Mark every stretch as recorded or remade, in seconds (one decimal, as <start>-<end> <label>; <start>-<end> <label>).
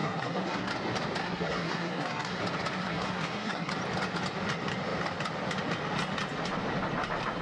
0.0-0.7 remade; 0.7-1.2 recorded; 1.2-2.4 remade; 2.4-2.8 recorded; 2.8-3.7 remade; 3.7-7.4 recorded